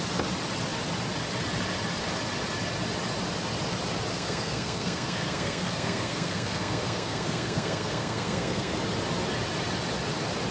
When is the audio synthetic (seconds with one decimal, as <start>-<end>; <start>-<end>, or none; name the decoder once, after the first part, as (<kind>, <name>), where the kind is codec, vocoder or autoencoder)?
4.1-8.8 (codec, SNAC)